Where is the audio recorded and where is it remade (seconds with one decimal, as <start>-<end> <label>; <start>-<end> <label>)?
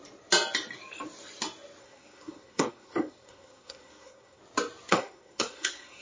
0.0-1.8 recorded; 1.8-4.4 remade; 4.4-4.9 recorded; 4.9-6.0 remade